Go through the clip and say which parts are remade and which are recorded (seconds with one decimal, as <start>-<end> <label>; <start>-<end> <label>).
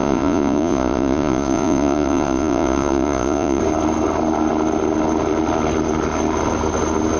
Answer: 0.0-3.6 remade; 3.6-7.2 recorded